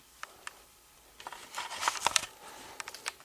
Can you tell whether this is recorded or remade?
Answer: recorded